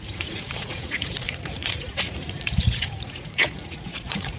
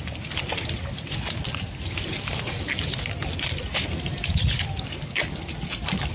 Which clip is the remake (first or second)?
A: first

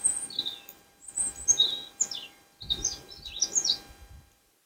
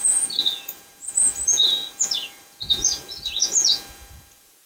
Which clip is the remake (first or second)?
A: second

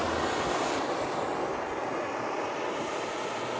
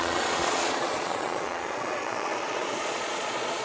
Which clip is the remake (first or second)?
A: second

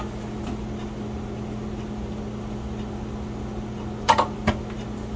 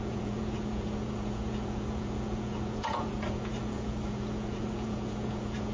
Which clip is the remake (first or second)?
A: second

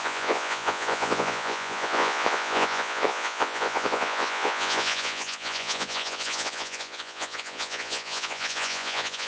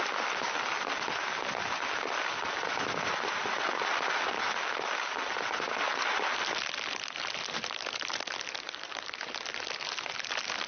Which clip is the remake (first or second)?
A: first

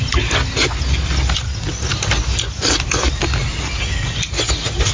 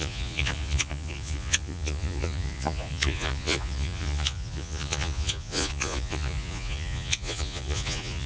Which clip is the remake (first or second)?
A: second